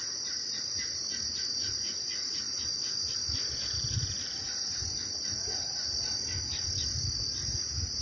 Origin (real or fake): real